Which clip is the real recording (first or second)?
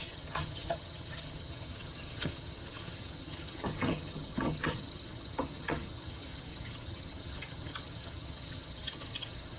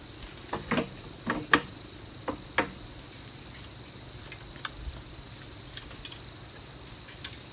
second